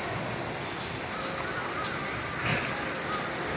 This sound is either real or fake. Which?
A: real